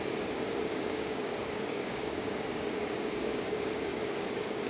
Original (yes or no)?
no